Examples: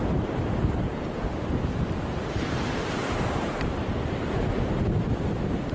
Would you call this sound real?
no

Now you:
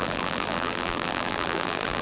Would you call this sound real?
no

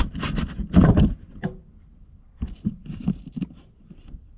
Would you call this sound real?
no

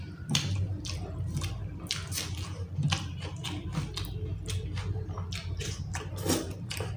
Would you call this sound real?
no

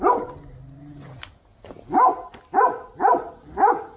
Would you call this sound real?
yes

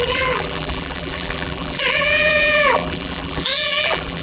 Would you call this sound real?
no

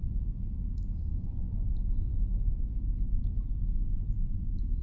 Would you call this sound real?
no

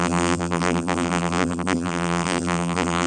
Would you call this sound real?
no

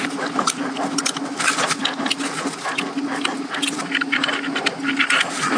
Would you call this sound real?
yes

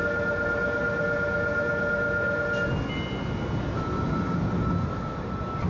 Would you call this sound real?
yes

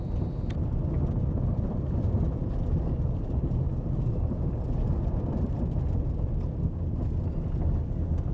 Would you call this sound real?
yes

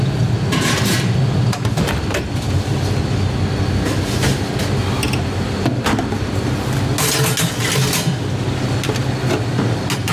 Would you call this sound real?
yes